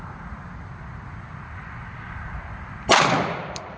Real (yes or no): yes